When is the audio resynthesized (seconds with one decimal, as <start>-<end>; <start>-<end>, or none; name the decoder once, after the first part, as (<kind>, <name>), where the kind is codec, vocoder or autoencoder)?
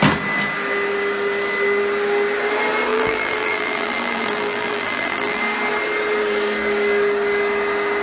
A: 2.9-5.4 (vocoder, BigVGAN v2)